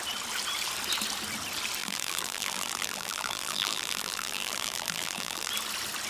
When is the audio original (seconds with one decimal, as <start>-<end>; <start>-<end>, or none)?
0.0-1.8; 5.5-6.1